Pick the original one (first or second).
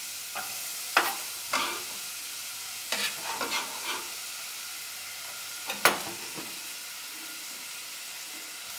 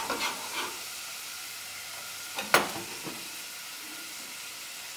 first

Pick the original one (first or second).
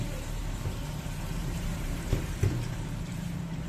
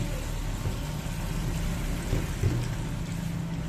second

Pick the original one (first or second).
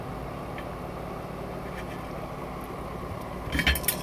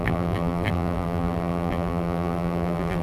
first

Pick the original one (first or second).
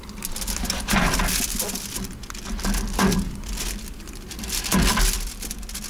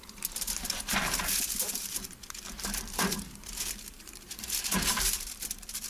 first